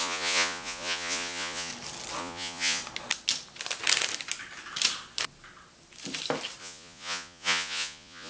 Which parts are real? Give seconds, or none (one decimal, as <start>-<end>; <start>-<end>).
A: 1.7-2.2; 2.8-6.6